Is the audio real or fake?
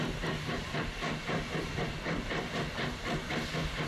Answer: real